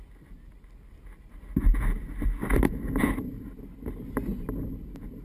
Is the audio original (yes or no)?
yes